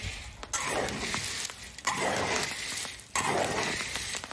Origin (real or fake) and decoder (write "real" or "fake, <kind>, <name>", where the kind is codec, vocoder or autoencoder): real